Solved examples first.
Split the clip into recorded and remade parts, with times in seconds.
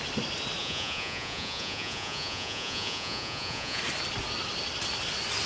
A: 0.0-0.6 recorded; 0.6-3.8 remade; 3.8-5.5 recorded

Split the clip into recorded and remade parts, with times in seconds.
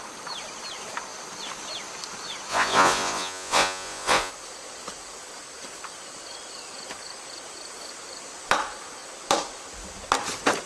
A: 0.0-2.5 recorded; 2.5-4.3 remade; 4.3-10.7 recorded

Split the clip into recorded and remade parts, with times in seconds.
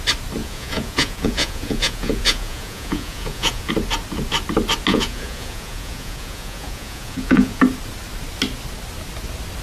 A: 0.0-0.4 recorded; 0.4-3.7 remade; 3.7-4.9 recorded; 4.9-7.6 remade; 7.6-9.6 recorded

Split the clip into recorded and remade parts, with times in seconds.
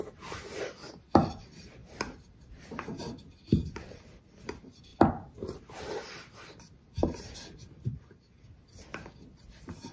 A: 0.0-9.9 recorded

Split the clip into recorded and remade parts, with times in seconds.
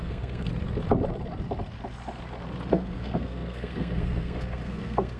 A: 0.0-0.5 remade; 0.5-2.7 recorded; 2.7-5.2 remade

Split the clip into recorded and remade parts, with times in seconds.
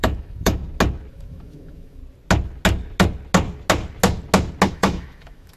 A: 0.0-0.6 remade; 0.6-1.1 recorded; 1.1-2.0 remade; 2.0-4.7 recorded; 4.7-5.6 remade